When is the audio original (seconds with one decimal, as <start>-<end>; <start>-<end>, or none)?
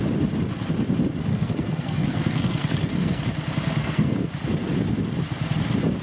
0.0-1.3; 3.2-3.8; 4.3-6.0